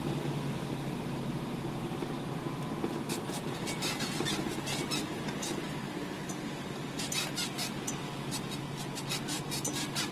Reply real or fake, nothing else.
real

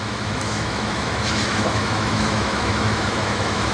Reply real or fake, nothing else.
fake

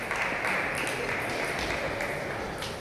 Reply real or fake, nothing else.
real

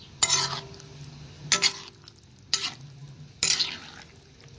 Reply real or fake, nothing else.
real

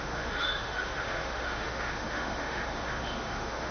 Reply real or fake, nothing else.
fake